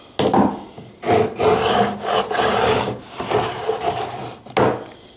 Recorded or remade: recorded